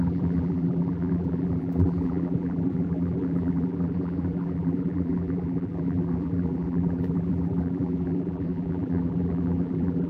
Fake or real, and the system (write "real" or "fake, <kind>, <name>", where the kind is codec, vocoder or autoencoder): fake, vocoder, BigVGAN v2